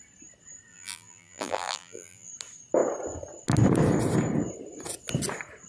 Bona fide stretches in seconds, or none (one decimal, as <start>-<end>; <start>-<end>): 0.0-0.7; 2.3-5.7